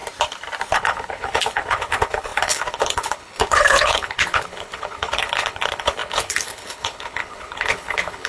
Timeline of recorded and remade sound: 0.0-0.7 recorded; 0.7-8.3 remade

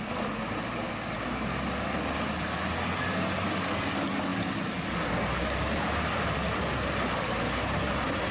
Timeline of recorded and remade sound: 0.0-8.3 recorded

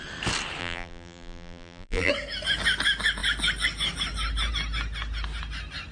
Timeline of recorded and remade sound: 0.0-0.6 recorded; 0.6-2.1 remade; 2.1-5.9 recorded

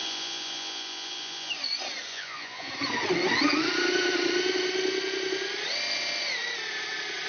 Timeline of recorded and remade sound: 0.0-1.5 remade; 1.5-2.1 recorded; 2.1-2.7 remade; 2.7-7.3 recorded

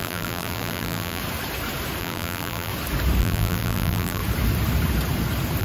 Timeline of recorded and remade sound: 0.0-1.2 remade; 1.2-2.0 recorded; 2.0-2.7 remade; 2.7-3.2 recorded; 3.2-4.2 remade; 4.2-5.6 recorded

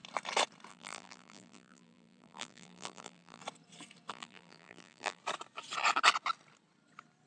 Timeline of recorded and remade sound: 0.0-0.7 recorded; 0.7-3.4 remade; 3.4-4.1 recorded; 4.1-5.2 remade; 5.2-7.3 recorded